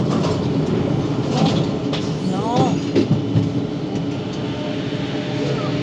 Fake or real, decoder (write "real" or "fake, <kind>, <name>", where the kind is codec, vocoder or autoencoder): real